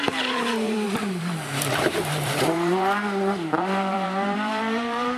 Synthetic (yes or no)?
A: yes